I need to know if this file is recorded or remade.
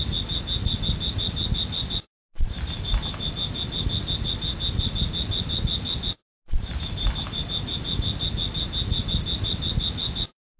recorded